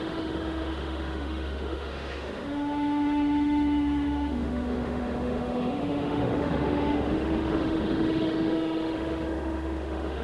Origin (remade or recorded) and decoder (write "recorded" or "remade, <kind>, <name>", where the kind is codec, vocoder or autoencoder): remade, autoencoder, DAC-VAE